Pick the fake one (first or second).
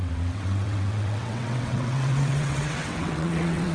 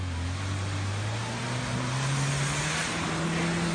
first